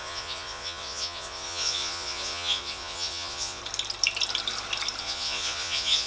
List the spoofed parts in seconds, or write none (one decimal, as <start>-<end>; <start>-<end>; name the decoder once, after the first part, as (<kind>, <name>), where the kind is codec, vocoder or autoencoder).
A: 0.0-3.6 (vocoder, Vocos); 5.0-6.1